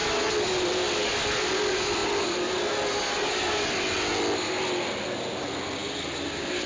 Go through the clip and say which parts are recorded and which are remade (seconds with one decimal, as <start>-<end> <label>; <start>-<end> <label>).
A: 0.0-5.8 recorded; 5.8-6.7 remade